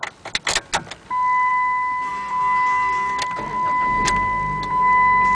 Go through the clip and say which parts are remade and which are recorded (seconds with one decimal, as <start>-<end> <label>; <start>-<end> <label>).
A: 0.0-5.3 recorded